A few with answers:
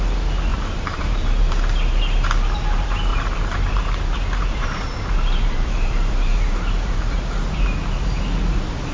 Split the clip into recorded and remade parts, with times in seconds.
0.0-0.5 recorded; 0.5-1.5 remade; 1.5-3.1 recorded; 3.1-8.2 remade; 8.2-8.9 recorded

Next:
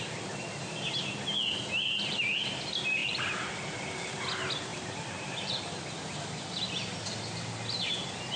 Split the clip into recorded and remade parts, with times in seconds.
0.0-3.0 recorded; 3.0-3.5 remade; 3.5-4.7 recorded; 4.7-5.6 remade; 5.6-8.4 recorded

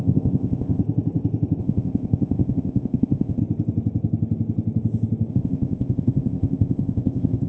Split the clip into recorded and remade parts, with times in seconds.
0.0-0.8 remade; 0.8-1.6 recorded; 1.6-3.4 remade; 3.4-5.3 recorded; 5.3-7.5 remade

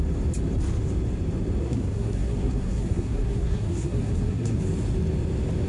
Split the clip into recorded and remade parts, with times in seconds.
0.0-1.6 recorded; 1.6-4.6 remade; 4.6-5.7 recorded

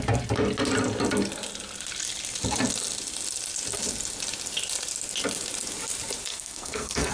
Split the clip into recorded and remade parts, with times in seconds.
0.0-6.3 recorded; 6.3-7.1 remade

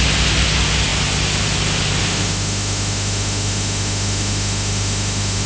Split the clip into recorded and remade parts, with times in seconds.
0.0-2.0 recorded; 2.0-5.5 remade

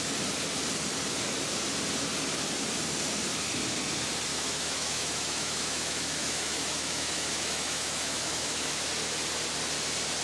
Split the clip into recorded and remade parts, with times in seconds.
0.0-4.3 recorded; 4.3-8.9 remade; 8.9-10.2 recorded

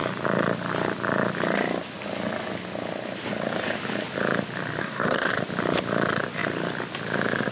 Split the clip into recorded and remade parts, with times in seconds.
0.0-4.8 recorded; 4.8-5.3 remade; 5.3-7.5 recorded